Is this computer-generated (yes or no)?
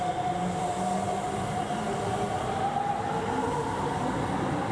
no